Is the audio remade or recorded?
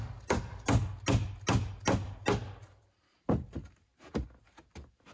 recorded